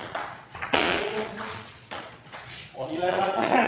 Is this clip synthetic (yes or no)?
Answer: yes